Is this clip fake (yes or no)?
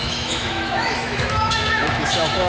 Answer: yes